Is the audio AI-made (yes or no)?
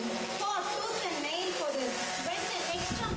no